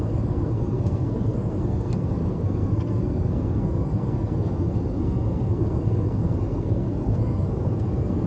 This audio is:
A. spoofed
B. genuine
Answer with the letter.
A